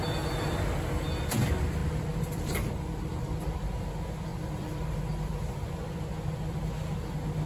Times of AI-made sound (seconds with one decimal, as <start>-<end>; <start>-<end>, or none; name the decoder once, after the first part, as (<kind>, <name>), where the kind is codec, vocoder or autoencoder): 1.8-3.9 (vocoder, BigVGAN v2); 4.3-5.7